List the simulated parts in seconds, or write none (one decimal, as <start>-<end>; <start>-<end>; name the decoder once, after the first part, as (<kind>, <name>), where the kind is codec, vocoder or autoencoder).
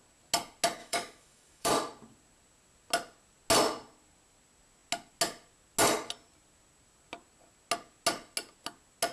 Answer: 0.8-1.7 (autoencoder, DAC-VAE)